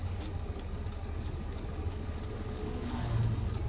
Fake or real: fake